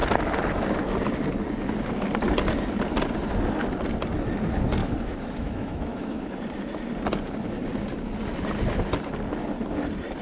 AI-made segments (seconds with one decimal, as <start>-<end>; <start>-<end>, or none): 4.8-6.3